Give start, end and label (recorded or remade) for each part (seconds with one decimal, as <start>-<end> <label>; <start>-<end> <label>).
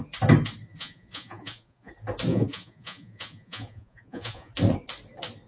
0.0-0.7 recorded; 0.7-1.9 remade; 1.9-2.3 recorded; 2.3-4.5 remade; 4.5-5.5 recorded